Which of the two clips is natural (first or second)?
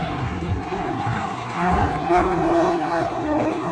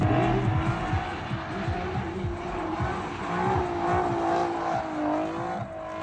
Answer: second